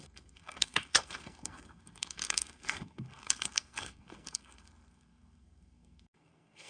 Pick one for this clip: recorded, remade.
remade